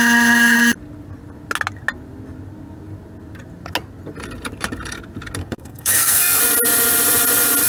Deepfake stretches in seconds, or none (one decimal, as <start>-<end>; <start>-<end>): 5.4-6.4